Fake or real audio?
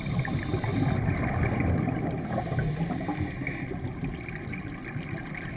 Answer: real